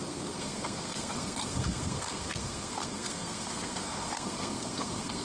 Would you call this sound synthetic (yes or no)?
yes